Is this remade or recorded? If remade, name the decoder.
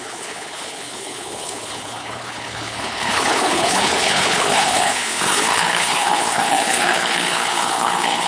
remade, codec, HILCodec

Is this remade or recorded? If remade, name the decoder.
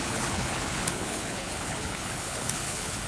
remade, codec, HILCodec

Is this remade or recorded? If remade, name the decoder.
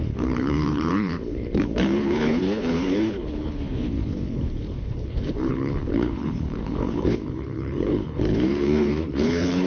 remade, codec, HILCodec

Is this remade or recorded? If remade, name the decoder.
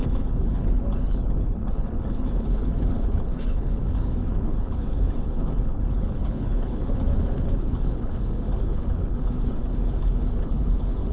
remade, codec, HILCodec